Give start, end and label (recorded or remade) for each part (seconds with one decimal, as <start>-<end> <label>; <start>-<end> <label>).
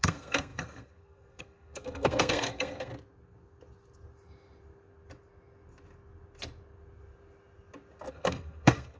0.0-2.9 remade; 2.9-8.1 recorded; 8.1-9.0 remade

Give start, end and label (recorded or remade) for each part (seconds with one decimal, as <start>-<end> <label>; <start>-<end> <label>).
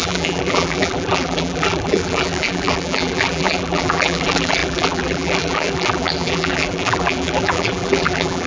0.0-8.5 remade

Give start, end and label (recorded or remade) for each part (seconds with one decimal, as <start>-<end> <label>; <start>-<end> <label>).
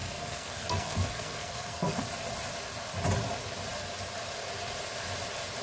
0.0-2.0 remade; 2.0-5.6 recorded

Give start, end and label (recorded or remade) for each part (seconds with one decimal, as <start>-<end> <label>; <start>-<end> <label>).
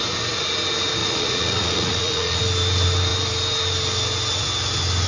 0.0-1.0 recorded; 1.0-2.4 remade; 2.4-5.1 recorded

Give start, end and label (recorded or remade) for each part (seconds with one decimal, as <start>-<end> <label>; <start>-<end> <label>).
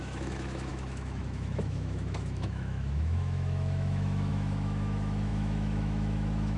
0.0-6.6 remade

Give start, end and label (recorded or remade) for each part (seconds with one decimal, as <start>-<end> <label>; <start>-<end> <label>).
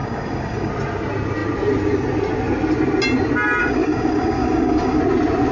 0.0-0.7 remade; 0.7-3.6 recorded; 3.6-5.0 remade; 5.0-5.5 recorded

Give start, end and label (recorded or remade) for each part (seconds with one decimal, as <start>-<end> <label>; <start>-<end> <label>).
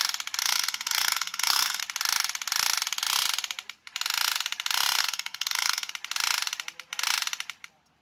0.0-0.4 recorded; 0.4-1.8 remade; 1.8-5.0 recorded; 5.0-5.9 remade; 5.9-8.0 recorded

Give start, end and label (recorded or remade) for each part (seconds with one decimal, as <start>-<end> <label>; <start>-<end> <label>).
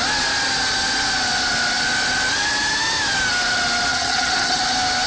0.0-3.9 recorded; 3.9-4.6 remade; 4.6-5.1 recorded